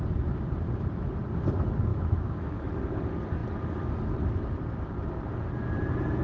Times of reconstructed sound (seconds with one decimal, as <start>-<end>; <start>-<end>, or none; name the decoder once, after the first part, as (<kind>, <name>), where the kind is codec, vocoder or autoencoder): 1.9-2.6 (autoencoder, DAC-VAE)